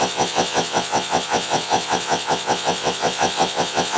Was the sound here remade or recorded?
remade